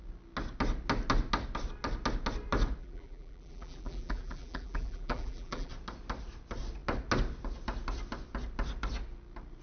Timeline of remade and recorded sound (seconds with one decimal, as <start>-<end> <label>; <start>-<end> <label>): 0.0-2.8 recorded; 2.8-5.7 remade; 5.7-9.6 recorded